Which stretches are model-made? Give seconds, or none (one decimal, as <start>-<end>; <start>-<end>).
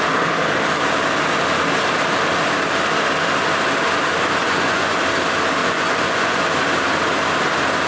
4.4-5.0; 5.6-6.4